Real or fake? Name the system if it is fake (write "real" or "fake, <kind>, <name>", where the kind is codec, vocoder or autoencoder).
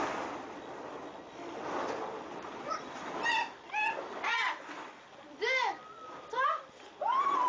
real